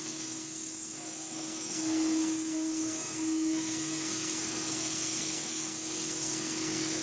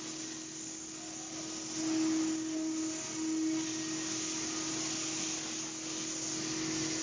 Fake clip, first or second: first